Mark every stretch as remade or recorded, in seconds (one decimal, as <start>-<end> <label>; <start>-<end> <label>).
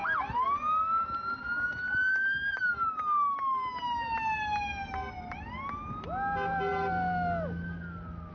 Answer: 0.0-8.3 recorded